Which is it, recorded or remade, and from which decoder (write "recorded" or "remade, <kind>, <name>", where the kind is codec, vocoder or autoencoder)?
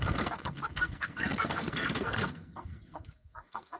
remade, codec, SNAC